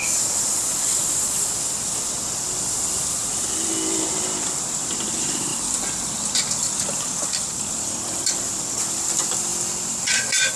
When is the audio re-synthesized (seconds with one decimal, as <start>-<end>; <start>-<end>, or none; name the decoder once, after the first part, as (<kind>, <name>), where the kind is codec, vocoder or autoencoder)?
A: 0.0-5.5 (vocoder, BigVGAN v2); 6.8-10.6